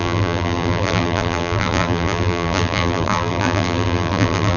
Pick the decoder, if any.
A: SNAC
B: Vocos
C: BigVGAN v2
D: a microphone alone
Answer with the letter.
C